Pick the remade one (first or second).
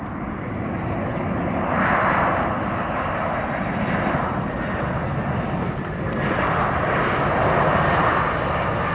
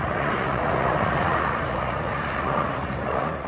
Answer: second